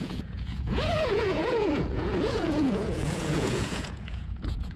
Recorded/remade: remade